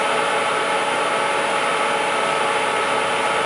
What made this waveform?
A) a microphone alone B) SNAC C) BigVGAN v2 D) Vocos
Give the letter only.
A